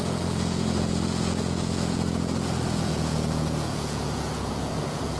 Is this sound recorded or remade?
remade